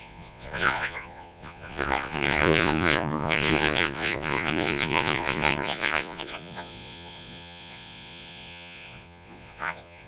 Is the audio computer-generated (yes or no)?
yes